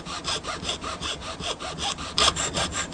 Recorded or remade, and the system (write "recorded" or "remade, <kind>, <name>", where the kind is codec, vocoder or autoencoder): recorded